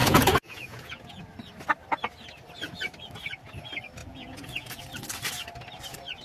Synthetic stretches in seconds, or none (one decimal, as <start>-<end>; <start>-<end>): 0.0-1.2; 4.0-4.8